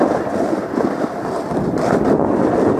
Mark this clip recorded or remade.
recorded